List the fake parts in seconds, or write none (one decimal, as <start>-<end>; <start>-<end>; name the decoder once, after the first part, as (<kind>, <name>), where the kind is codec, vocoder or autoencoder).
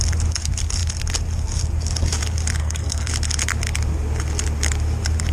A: 2.6-3.1 (codec, SNAC)